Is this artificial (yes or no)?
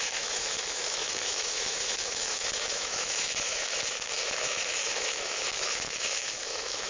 yes